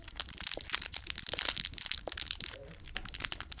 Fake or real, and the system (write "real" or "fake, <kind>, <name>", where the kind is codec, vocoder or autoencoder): real